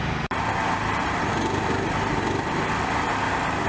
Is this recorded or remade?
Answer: recorded